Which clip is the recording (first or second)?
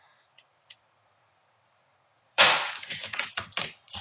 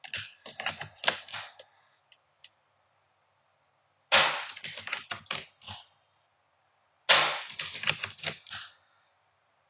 second